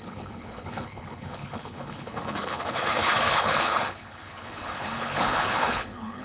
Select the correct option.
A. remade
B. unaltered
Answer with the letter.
A